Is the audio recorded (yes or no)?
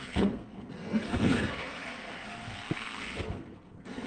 no